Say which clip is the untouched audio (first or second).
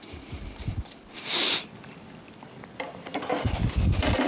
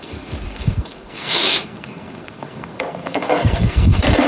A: first